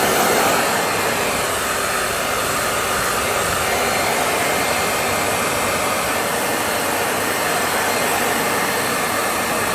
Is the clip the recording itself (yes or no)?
yes